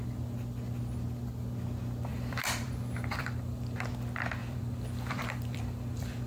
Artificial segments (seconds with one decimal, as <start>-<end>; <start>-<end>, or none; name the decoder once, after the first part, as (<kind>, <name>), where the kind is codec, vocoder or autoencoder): 2.1-3.9 (vocoder, BigVGAN v2); 4.4-6.3